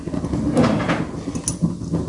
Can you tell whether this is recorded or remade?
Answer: recorded